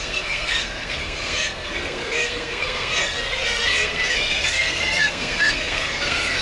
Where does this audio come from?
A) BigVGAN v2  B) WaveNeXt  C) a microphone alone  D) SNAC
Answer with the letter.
D